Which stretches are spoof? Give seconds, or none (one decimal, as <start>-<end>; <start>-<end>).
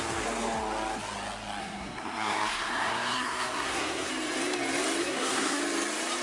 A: 1.6-4.1; 5.0-5.6